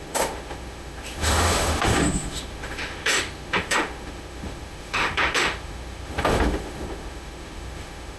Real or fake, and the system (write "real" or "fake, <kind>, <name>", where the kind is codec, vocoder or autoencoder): fake, autoencoder, DAC-VAE